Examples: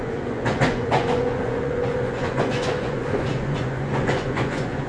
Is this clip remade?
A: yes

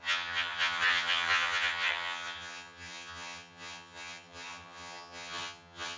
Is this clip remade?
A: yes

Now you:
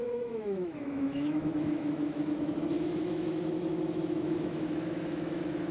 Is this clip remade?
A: yes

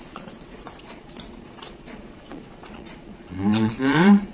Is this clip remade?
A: yes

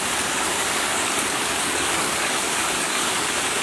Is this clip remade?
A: yes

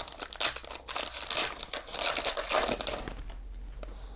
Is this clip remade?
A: no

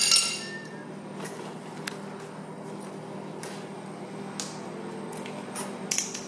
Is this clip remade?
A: no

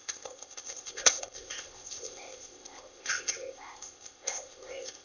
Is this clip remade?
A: yes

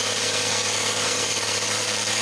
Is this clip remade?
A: yes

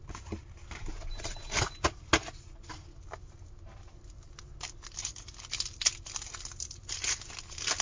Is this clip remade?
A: no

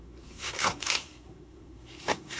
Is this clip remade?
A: yes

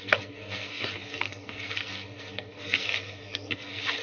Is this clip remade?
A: yes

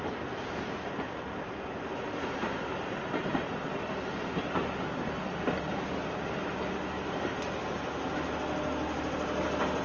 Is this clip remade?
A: no